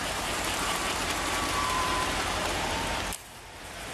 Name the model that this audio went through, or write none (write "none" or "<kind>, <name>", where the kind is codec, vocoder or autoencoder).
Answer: vocoder, BigVGAN v2